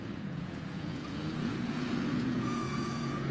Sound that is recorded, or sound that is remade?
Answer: remade